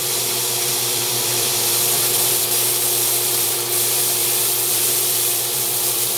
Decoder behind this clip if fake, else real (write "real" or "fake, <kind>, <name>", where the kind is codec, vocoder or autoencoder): fake, vocoder, BigVGAN v2